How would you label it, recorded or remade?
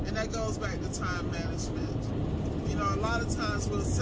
recorded